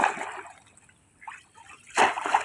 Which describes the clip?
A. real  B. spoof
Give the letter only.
A